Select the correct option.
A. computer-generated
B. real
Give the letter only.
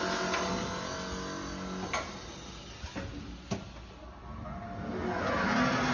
B